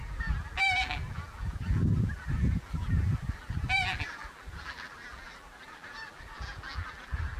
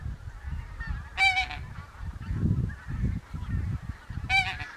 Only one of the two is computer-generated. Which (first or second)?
first